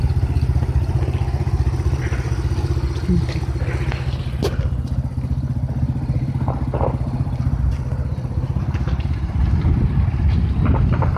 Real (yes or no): yes